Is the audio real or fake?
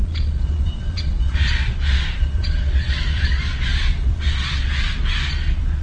fake